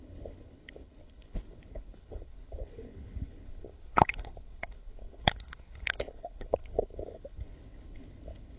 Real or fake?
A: fake